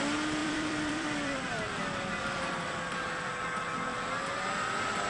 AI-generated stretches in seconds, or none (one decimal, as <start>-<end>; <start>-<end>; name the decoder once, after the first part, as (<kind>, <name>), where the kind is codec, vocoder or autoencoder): 0.4-3.3 (vocoder, BigVGAN v2)

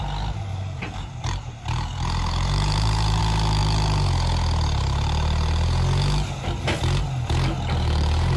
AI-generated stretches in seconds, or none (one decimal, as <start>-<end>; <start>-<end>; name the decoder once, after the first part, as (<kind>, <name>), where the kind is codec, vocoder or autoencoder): 0.5-3.2 (vocoder, BigVGAN v2)

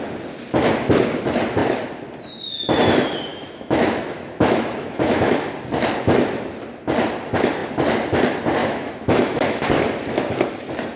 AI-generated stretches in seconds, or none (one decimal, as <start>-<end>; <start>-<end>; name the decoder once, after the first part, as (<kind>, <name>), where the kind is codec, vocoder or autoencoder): 3.3-5.5 (autoencoder, DAC-VAE); 8.6-9.7